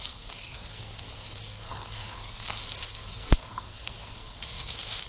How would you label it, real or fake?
fake